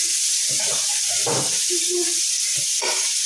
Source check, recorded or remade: remade